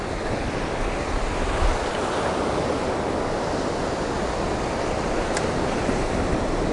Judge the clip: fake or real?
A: real